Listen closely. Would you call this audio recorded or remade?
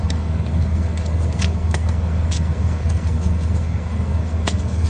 remade